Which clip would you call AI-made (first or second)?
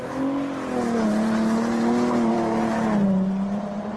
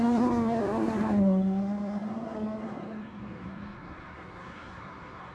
second